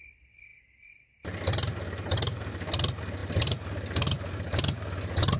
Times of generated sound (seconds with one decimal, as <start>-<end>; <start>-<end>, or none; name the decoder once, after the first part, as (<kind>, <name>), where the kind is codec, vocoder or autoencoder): none